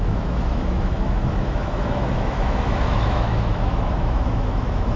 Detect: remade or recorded remade